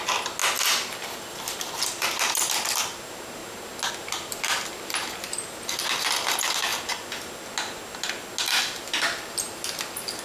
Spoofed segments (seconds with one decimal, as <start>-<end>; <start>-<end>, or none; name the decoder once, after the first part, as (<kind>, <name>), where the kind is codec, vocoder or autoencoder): none